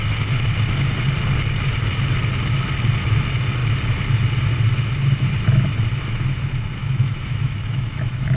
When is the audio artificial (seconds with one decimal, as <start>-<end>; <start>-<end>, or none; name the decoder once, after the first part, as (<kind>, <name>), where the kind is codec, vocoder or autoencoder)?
6.8-8.4 (autoencoder, DAC-VAE)